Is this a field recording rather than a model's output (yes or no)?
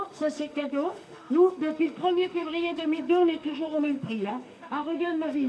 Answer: no